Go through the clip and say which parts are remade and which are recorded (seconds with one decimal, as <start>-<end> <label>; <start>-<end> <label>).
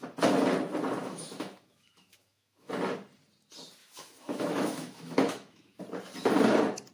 0.0-1.0 recorded; 1.0-2.7 remade; 2.7-3.8 recorded; 3.8-5.8 remade; 5.8-6.9 recorded